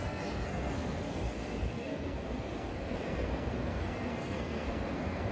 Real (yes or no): no